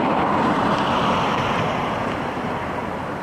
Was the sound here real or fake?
fake